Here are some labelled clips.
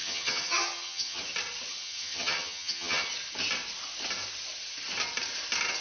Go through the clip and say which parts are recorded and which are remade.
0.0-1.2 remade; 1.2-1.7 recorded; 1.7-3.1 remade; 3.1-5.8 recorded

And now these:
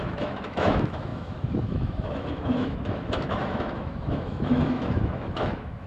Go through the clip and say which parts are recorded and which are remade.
0.0-5.9 remade

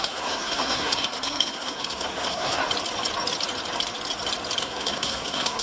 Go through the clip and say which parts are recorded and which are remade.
0.0-2.6 remade; 2.6-4.6 recorded; 4.6-5.6 remade

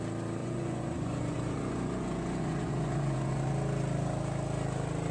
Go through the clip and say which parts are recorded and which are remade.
0.0-0.4 recorded; 0.4-3.5 remade; 3.5-5.1 recorded

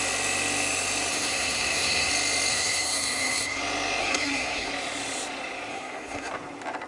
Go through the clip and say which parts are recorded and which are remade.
0.0-1.1 recorded; 1.1-2.1 remade; 2.1-2.5 recorded; 2.5-3.6 remade; 3.6-4.0 recorded; 4.0-4.7 remade; 4.7-5.7 recorded; 5.7-6.3 remade; 6.3-6.9 recorded

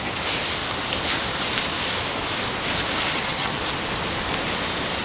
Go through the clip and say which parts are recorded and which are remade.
0.0-3.1 recorded; 3.1-3.6 remade; 3.6-5.0 recorded

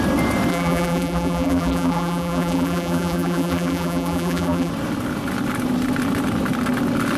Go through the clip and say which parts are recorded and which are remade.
0.0-0.5 recorded; 0.5-4.7 remade; 4.7-7.2 recorded

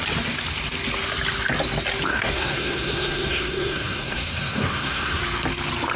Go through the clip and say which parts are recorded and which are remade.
0.0-2.1 recorded; 2.1-5.2 remade; 5.2-6.0 recorded